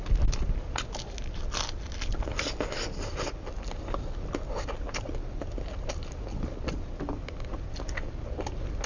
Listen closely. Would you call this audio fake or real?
real